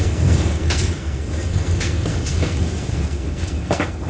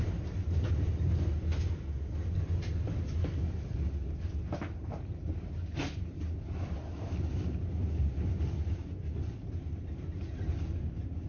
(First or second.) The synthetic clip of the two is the first